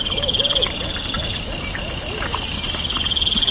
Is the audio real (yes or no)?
yes